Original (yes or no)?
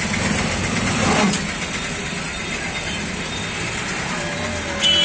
yes